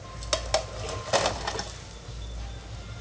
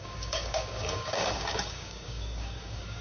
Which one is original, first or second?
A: first